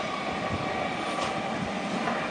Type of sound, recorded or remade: recorded